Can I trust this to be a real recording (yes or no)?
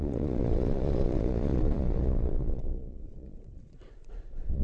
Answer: no